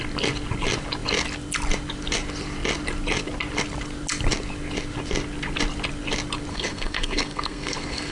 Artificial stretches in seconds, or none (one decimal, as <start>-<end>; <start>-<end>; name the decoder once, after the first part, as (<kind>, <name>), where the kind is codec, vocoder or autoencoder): 6.5-8.1 (codec, SNAC)